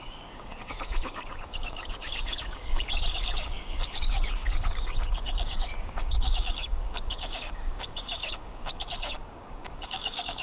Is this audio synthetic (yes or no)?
yes